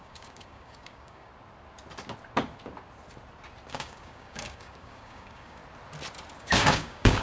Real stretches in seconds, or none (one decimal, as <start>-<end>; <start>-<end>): 1.3-3.7; 5.6-6.4